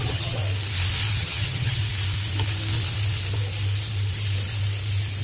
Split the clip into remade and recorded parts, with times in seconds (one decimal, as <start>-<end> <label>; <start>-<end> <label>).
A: 0.0-0.4 remade; 0.4-1.2 recorded; 1.2-1.8 remade; 1.8-5.2 recorded